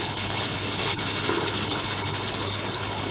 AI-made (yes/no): yes